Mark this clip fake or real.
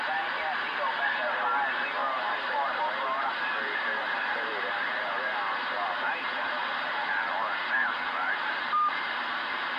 fake